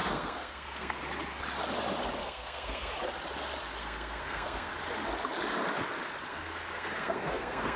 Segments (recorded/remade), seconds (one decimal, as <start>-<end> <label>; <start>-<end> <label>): 0.0-1.0 remade; 1.0-2.2 recorded; 2.2-2.9 remade; 2.9-3.8 recorded; 3.8-4.7 remade; 4.7-6.3 recorded; 6.3-7.8 remade